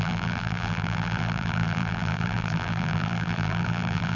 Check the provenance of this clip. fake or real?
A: fake